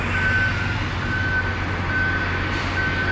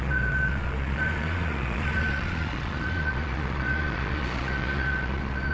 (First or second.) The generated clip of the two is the second